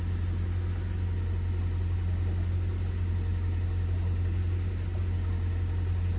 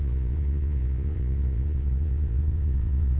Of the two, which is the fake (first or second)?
second